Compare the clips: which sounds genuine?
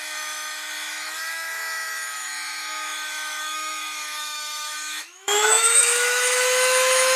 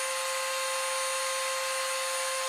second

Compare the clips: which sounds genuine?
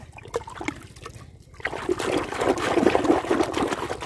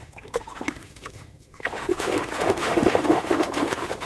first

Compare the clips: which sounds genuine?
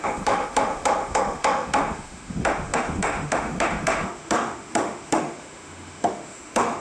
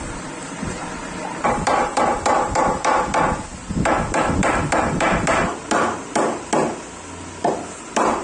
second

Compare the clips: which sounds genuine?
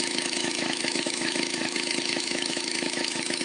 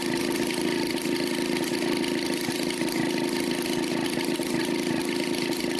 second